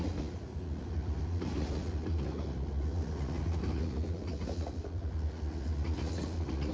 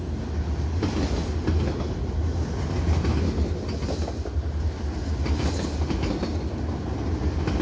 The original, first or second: second